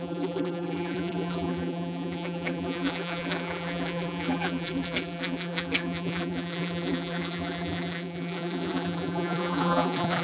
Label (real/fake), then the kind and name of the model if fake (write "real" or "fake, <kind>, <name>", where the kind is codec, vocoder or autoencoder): fake, vocoder, BigVGAN v2